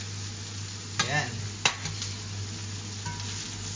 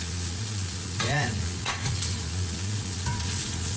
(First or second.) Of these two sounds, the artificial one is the second